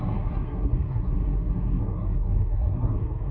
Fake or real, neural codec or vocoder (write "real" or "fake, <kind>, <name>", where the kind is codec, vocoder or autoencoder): fake, codec, SNAC